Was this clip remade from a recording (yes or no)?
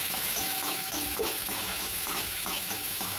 yes